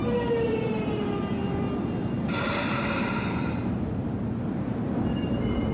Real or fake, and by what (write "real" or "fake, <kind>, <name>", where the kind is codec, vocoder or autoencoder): fake, vocoder, BigVGAN v2